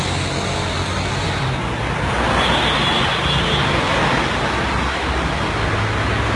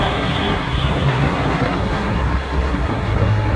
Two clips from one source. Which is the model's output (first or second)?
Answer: second